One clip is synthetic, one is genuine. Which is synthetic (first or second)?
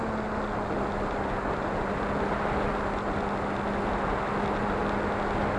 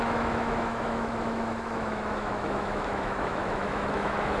second